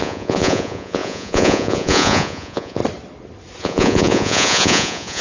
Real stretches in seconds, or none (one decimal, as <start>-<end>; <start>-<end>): 2.8-3.6